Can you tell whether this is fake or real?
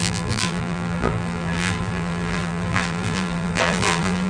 fake